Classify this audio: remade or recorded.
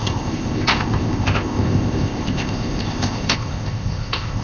remade